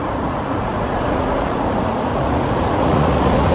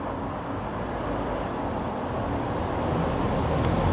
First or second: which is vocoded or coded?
first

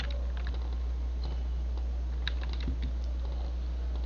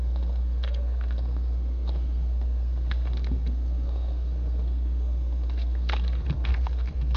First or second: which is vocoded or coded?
second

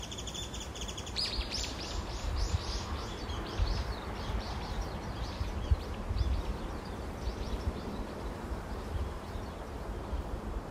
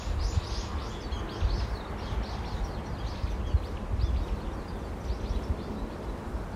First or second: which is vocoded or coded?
first